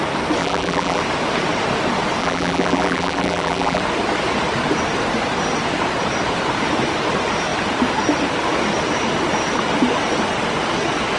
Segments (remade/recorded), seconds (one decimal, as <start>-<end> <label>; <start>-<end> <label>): 0.0-0.4 recorded; 0.4-1.0 remade; 1.0-2.2 recorded; 2.2-3.8 remade; 3.8-11.2 recorded